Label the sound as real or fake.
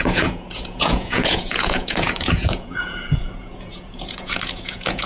fake